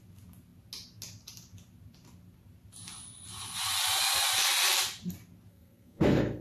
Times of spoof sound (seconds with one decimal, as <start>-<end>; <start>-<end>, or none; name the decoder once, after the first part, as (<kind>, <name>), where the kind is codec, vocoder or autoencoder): 5.5-6.4 (codec, SNAC)